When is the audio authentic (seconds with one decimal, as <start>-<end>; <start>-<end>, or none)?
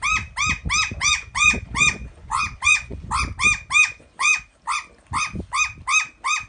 0.0-1.0; 3.1-3.8; 4.4-6.5